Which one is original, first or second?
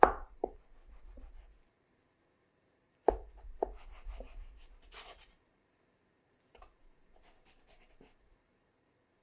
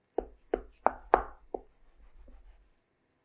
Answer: second